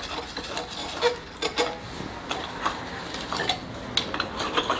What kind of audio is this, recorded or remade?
recorded